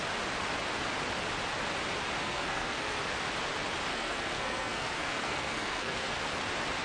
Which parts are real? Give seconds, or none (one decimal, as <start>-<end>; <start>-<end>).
0.0-2.2; 3.0-3.9; 6.1-6.8